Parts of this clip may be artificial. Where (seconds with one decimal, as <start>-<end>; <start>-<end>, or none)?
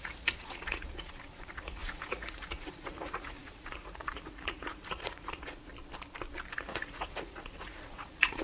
0.0-5.7; 6.5-8.4